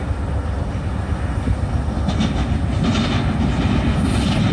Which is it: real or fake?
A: real